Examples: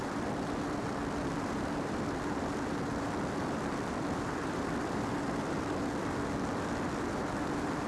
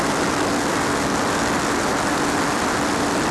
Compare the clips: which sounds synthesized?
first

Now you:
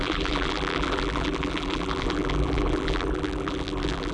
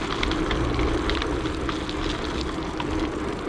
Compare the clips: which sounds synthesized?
first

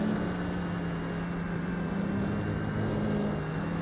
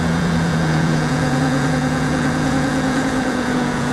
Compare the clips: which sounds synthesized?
second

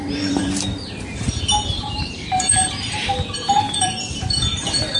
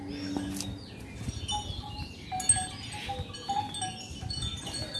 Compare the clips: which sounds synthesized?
first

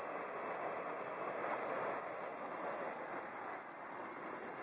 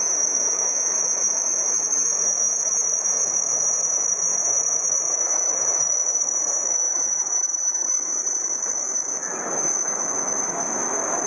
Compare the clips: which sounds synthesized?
second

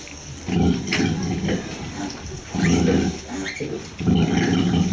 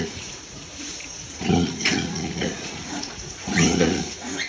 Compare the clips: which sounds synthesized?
second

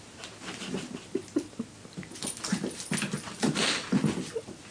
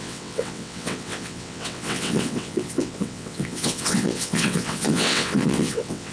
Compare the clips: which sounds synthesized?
second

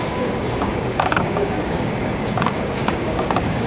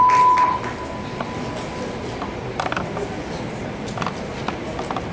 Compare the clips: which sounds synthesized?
first